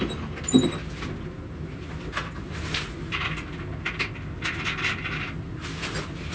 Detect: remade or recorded recorded